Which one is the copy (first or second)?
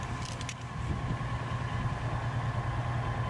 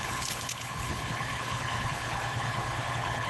second